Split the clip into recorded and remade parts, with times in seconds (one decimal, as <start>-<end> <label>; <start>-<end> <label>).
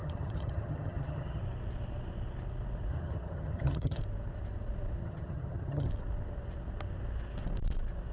0.0-1.4 remade; 1.4-2.9 recorded; 2.9-4.0 remade; 4.0-5.0 recorded; 5.0-5.9 remade; 5.9-8.1 recorded